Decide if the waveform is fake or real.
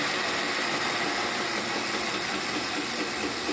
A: real